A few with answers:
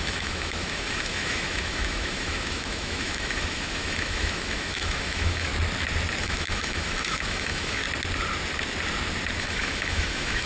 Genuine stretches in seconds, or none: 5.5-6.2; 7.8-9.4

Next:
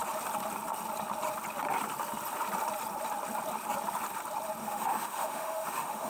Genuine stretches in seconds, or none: 0.0-4.6

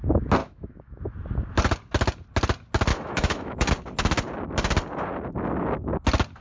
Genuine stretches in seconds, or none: 0.0-0.4; 1.0-2.9; 3.7-6.4

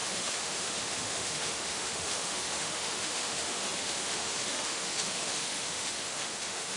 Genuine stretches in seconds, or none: none